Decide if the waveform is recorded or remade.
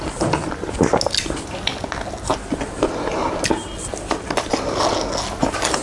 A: recorded